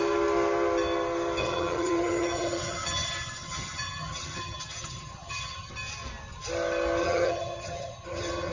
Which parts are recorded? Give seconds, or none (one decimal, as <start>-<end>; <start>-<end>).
0.0-1.4; 5.7-7.0